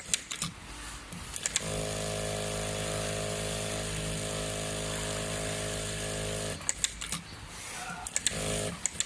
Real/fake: real